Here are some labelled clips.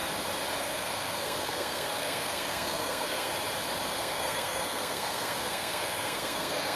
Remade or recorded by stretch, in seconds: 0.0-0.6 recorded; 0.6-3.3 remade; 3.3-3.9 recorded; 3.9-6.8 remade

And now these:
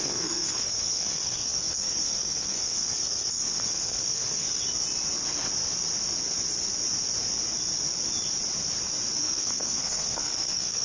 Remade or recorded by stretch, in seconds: 0.0-4.6 remade; 4.6-9.2 recorded; 9.2-10.8 remade

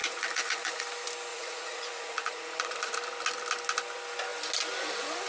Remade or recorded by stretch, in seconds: 0.0-0.8 remade; 0.8-1.3 recorded; 1.3-2.9 remade; 2.9-5.3 recorded

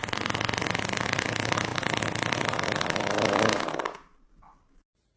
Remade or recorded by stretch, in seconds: 0.0-5.2 recorded

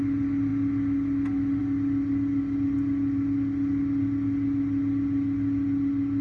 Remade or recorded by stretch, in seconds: 0.0-6.2 recorded

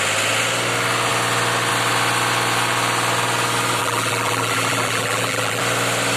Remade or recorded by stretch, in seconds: 0.0-3.8 recorded; 3.8-5.6 remade; 5.6-6.2 recorded